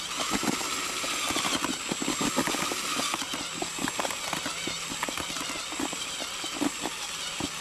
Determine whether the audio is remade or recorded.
recorded